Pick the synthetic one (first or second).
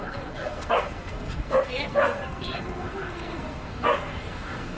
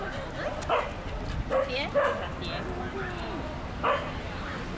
first